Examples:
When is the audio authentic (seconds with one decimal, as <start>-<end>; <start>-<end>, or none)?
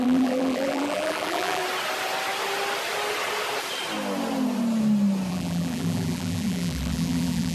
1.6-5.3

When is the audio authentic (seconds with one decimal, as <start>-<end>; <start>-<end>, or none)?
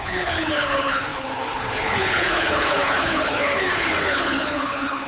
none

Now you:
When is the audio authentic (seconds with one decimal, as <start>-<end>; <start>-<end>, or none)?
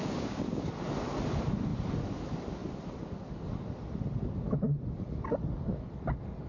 0.7-6.5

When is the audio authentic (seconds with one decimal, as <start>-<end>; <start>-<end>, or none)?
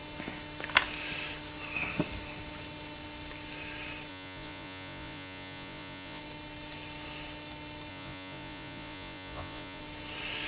0.0-4.1; 6.2-7.9; 9.8-10.5